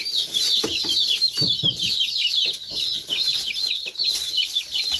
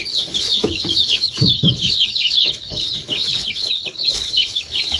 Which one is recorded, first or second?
first